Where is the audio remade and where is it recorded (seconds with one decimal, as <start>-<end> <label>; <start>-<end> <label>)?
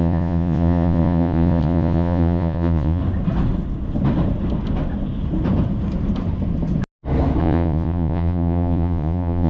0.0-3.0 remade; 3.0-7.4 recorded; 7.4-9.5 remade